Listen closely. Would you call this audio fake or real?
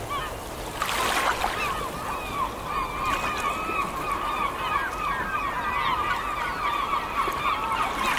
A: real